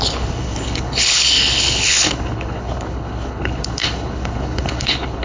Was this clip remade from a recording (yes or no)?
yes